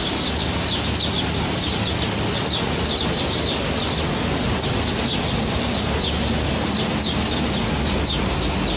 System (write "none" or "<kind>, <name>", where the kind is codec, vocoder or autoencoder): none